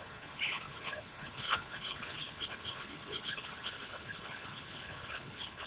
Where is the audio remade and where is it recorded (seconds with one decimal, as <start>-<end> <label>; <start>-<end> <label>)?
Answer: 0.0-5.7 remade